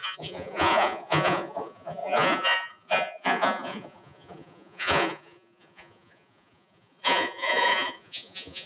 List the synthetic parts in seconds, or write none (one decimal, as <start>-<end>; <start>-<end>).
0.0-8.7